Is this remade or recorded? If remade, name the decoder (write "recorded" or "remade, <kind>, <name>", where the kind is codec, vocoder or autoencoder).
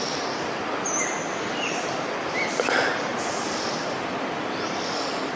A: remade, vocoder, BigVGAN v2